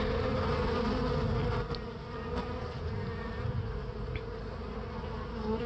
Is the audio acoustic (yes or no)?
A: yes